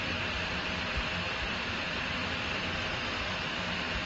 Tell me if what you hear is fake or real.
fake